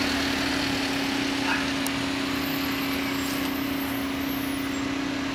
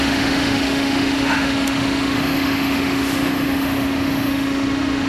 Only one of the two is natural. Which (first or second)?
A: first